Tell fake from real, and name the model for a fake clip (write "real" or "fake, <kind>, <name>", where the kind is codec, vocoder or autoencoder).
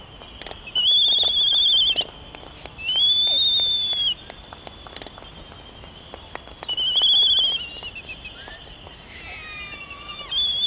real